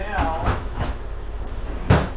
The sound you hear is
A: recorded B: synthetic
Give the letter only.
B